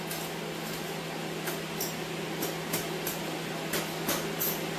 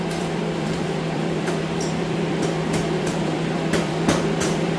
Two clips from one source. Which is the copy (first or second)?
second